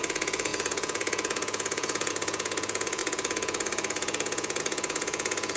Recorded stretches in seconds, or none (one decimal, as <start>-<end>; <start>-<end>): none